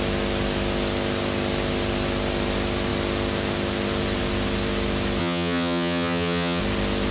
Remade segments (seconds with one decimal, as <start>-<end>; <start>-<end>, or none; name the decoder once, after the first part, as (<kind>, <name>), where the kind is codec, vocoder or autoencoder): 5.2-6.6 (vocoder, HiFi-GAN)